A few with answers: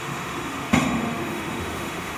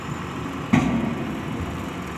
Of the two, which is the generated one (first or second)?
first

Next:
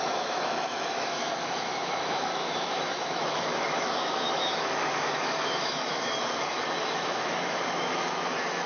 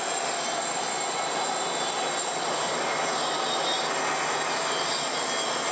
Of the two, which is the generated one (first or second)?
first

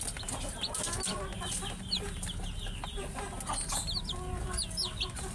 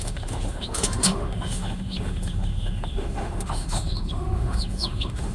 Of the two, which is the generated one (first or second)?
second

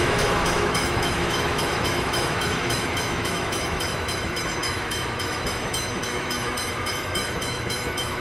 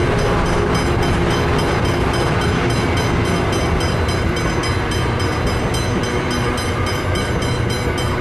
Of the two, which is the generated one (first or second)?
first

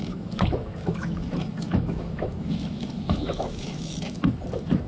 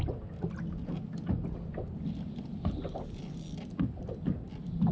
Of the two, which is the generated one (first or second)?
first